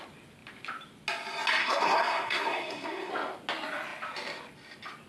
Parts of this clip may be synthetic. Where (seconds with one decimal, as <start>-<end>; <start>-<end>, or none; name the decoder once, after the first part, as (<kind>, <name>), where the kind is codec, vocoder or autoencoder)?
1.6-3.1 (codec, SNAC)